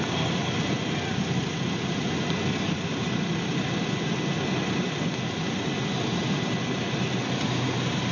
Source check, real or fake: real